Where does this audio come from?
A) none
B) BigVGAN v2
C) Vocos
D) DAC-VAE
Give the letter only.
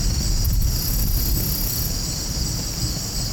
A